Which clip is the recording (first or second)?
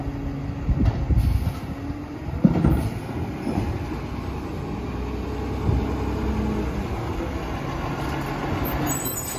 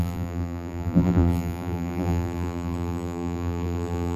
first